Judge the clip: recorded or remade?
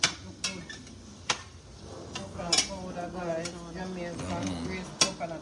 recorded